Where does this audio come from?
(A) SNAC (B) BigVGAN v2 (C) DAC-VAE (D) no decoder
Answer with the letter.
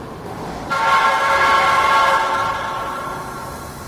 D